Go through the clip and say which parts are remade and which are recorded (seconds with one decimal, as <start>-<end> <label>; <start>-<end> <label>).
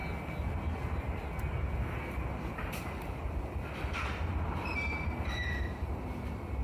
0.0-2.2 recorded; 2.2-3.2 remade; 3.2-4.3 recorded; 4.3-6.6 remade